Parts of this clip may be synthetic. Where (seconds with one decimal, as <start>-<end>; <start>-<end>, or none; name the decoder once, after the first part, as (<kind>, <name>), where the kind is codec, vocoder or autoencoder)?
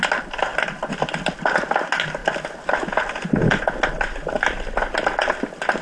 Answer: none